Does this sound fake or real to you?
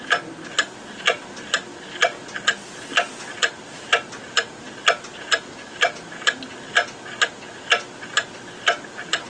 real